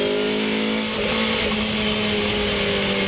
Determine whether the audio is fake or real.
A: real